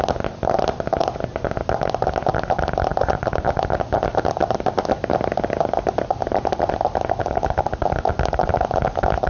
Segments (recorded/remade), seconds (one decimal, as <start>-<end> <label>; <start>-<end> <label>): 0.0-9.3 recorded